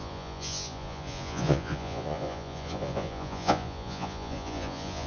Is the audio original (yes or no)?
no